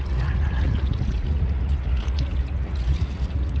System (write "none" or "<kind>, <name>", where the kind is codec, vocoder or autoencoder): vocoder, Vocos